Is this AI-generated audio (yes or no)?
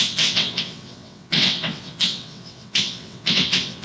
yes